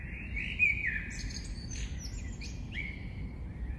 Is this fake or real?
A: real